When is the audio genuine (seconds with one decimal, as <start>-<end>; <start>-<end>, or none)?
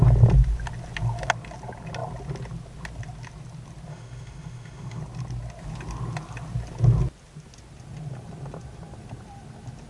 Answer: 0.0-3.9; 5.0-9.9